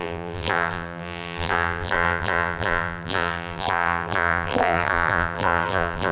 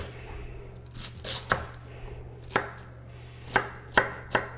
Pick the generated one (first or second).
first